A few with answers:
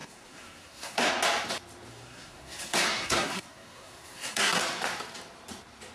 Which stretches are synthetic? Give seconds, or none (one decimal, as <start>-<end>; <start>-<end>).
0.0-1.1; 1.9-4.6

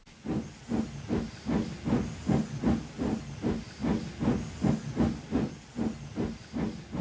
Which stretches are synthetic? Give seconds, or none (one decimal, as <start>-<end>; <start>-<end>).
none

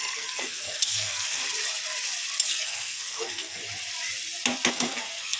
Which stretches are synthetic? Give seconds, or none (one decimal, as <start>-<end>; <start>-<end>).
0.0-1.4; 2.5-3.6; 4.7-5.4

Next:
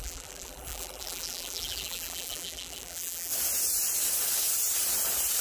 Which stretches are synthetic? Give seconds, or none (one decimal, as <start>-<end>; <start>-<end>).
0.0-3.3

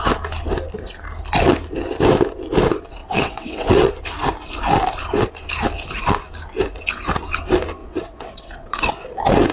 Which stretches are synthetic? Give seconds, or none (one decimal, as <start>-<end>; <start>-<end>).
3.0-3.9; 7.8-8.9

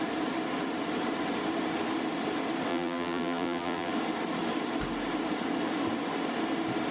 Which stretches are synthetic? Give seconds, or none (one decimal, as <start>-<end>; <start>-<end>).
2.7-3.9